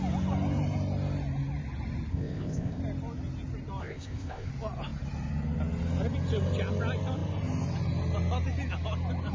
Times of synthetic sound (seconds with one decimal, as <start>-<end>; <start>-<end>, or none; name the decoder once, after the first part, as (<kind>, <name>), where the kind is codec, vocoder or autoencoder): 2.1-2.8 (codec, ZipCodec); 3.8-4.5